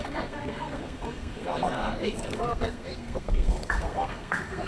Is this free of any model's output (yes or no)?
no